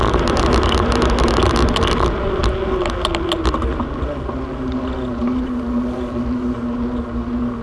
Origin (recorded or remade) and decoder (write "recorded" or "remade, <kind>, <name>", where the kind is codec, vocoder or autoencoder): recorded